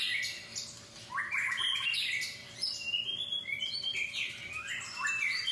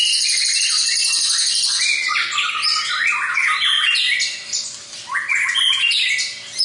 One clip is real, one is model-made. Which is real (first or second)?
second